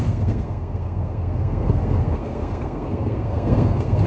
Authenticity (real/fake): fake